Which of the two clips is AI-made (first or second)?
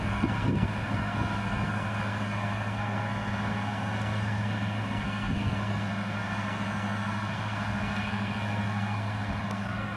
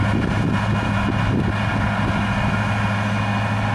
first